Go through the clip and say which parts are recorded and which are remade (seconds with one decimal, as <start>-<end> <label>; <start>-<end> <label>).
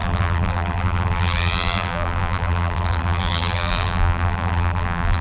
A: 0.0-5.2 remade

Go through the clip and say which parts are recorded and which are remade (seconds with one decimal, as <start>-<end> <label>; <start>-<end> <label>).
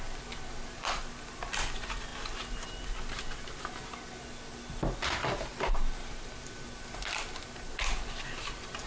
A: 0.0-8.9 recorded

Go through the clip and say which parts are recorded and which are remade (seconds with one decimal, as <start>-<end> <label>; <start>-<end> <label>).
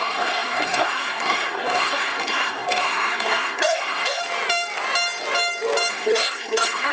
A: 0.0-4.2 remade; 4.2-5.9 recorded; 5.9-6.9 remade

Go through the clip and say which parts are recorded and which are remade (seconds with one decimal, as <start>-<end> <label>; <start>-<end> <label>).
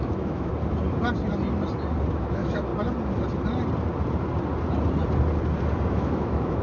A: 0.0-0.5 remade; 0.5-2.1 recorded; 2.1-2.7 remade; 2.7-5.9 recorded; 5.9-6.6 remade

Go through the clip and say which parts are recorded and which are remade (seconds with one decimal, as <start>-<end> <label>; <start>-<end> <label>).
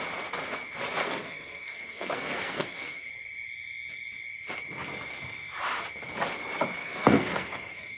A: 0.0-1.0 recorded; 1.0-3.1 remade; 3.1-6.8 recorded; 6.8-8.0 remade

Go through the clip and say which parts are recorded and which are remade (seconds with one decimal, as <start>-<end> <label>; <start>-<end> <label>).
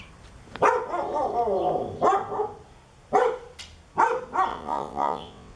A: 0.0-4.5 recorded; 4.5-5.6 remade